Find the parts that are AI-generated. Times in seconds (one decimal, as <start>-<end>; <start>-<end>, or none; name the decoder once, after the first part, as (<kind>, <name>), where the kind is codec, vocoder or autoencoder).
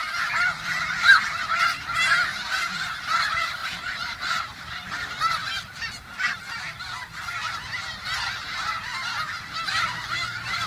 0.0-10.7 (vocoder, BigVGAN v2)